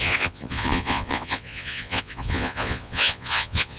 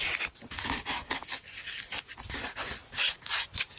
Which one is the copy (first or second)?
first